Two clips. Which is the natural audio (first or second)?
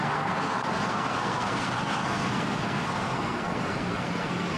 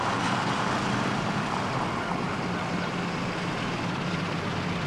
second